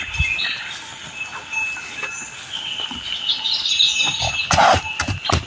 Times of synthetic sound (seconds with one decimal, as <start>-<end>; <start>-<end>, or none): none